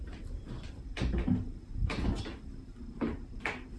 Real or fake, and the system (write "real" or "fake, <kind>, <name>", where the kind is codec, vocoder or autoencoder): real